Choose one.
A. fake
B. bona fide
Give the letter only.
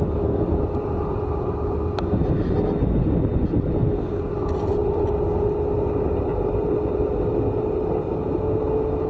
B